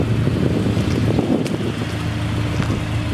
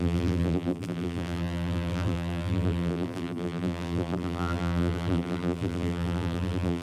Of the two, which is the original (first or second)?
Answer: first